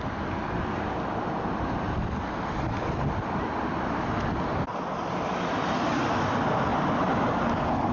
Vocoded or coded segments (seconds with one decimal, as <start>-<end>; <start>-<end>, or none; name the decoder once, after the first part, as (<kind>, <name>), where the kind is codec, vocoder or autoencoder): none